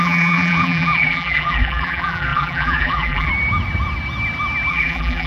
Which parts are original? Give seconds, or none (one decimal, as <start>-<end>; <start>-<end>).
3.3-4.7